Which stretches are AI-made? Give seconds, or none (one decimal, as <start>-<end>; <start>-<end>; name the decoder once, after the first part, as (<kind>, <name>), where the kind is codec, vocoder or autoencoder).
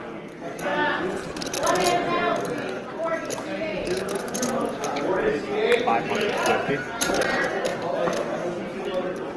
3.7-5.4 (vocoder, BigVGAN v2)